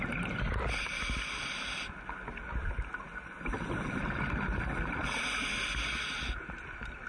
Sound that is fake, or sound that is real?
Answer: real